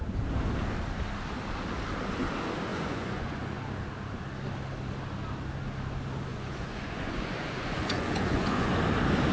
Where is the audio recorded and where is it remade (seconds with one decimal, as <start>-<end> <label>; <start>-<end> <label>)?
0.0-2.7 recorded; 2.7-3.6 remade; 3.6-6.3 recorded; 6.3-8.7 remade; 8.7-9.3 recorded